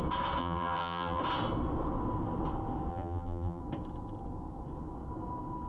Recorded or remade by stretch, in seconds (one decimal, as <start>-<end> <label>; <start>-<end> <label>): 0.0-0.4 recorded; 0.4-1.2 remade; 1.2-2.9 recorded; 2.9-3.6 remade; 3.6-5.7 recorded

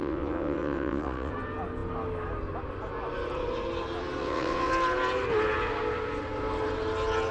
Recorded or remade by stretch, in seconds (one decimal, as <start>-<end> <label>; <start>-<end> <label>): 0.0-1.3 remade; 1.3-4.2 recorded; 4.2-4.7 remade; 4.7-7.3 recorded

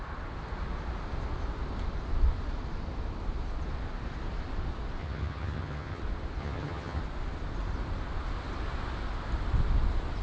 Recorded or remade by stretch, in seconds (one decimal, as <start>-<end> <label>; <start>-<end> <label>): 0.0-5.0 recorded; 5.0-6.0 remade; 6.0-6.4 recorded; 6.4-7.0 remade; 7.0-10.2 recorded

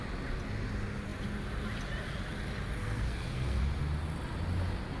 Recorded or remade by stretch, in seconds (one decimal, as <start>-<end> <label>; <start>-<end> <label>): 0.0-2.8 recorded; 2.8-3.6 remade; 3.6-5.0 recorded

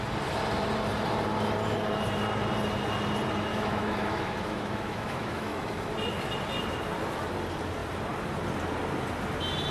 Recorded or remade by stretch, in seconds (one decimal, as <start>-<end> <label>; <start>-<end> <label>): 0.0-3.5 recorded; 3.5-5.9 remade; 5.9-9.7 recorded

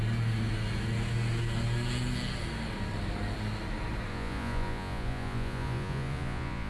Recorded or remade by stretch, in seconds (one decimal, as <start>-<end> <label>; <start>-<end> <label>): 0.0-4.1 recorded; 4.1-6.7 remade

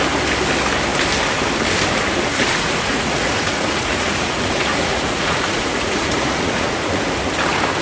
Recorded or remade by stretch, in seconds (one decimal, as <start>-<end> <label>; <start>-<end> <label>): 0.0-2.3 recorded; 2.3-7.0 remade; 7.0-7.8 recorded

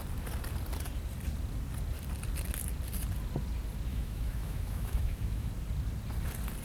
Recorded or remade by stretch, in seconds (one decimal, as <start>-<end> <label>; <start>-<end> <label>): 0.0-3.9 recorded; 3.9-5.5 remade; 5.5-6.6 recorded